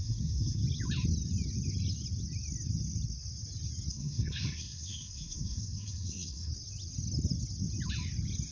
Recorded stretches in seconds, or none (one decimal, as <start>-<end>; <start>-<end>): 0.6-3.9; 6.5-8.5